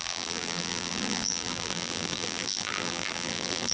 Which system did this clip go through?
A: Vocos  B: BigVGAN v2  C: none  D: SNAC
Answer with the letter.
B